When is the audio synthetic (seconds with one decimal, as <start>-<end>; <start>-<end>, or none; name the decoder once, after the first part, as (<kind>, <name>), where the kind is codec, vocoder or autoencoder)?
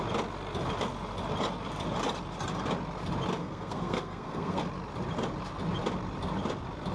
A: 3.4-4.6 (codec, SNAC)